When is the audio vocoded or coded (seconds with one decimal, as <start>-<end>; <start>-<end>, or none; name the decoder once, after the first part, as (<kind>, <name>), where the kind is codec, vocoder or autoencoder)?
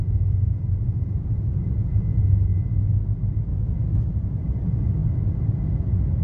3.5-4.1 (autoencoder, DAC-VAE)